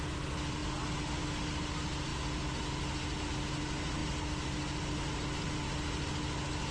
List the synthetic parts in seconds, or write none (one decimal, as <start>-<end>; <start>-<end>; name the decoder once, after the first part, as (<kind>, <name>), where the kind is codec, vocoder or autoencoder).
none